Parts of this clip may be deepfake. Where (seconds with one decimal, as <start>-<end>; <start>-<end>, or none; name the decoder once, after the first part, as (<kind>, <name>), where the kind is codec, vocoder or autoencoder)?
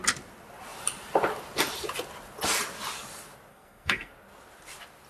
3.5-4.1 (codec, SNAC)